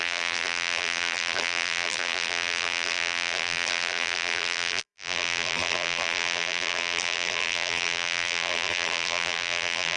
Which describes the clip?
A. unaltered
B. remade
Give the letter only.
B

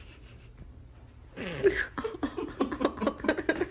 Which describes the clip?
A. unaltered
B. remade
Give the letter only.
A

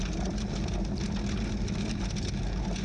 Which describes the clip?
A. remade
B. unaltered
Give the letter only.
B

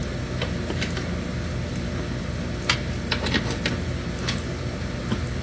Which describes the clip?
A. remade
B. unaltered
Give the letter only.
B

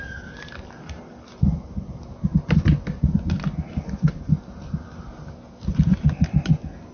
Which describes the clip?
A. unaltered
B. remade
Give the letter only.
A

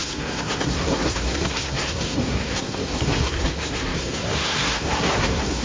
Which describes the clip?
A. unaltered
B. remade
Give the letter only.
B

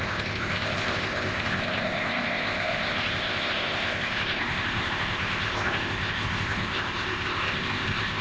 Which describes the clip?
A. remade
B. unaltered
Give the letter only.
A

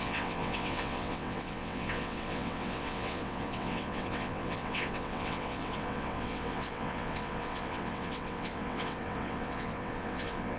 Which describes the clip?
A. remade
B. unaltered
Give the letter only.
A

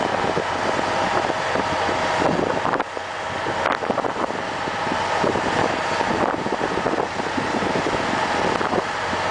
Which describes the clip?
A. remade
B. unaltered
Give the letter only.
B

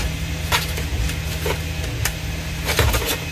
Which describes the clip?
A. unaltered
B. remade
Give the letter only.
A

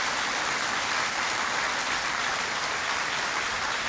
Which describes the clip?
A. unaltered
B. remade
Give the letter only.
B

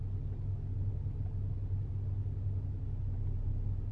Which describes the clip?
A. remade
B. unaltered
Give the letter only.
B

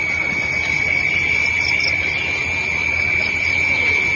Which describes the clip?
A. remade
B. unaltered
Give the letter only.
B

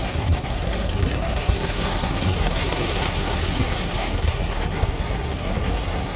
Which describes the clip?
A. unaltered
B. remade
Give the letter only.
B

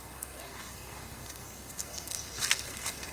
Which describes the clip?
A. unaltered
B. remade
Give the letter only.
B